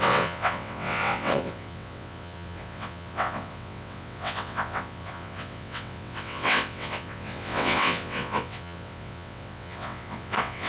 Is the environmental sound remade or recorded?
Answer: remade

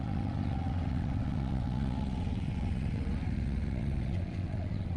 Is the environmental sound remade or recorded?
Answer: remade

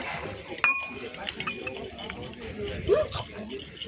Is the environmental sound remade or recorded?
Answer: recorded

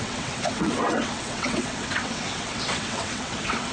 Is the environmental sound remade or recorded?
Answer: remade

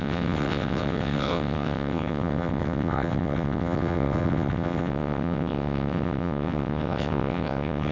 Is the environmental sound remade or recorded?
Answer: remade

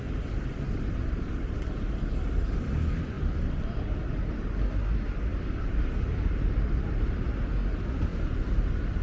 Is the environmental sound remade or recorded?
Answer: recorded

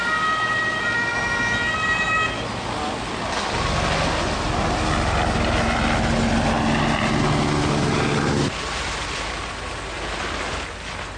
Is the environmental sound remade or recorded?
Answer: recorded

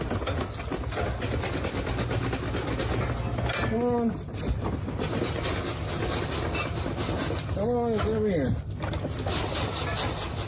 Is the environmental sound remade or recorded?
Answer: recorded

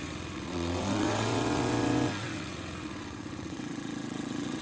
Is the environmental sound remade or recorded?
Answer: remade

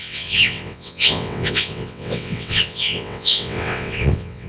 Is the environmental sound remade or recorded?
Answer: remade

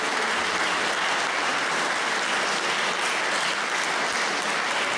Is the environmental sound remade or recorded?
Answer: recorded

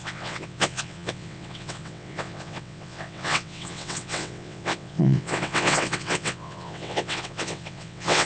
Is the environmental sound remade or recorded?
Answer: remade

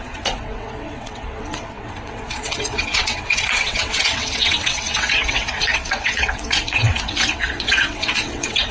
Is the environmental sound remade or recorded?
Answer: remade